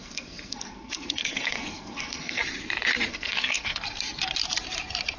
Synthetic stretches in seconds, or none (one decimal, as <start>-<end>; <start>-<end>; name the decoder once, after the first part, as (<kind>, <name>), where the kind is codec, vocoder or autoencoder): 0.0-2.4 (codec, SNAC); 3.1-3.8